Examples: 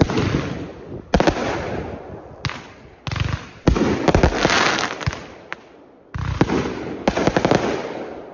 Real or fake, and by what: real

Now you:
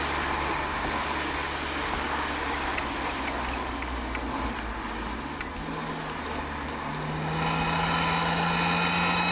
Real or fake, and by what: real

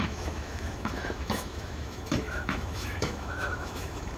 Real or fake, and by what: fake, autoencoder, DAC-VAE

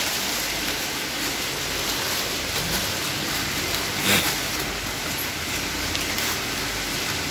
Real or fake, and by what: real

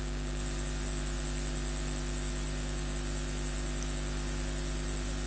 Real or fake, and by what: real